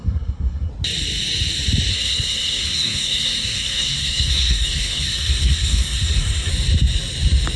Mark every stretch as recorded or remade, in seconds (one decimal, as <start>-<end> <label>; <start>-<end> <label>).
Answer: 0.0-0.7 remade; 0.7-1.9 recorded; 1.9-6.5 remade; 6.5-7.6 recorded